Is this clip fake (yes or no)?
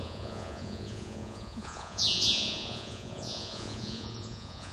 yes